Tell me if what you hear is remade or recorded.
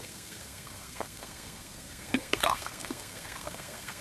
remade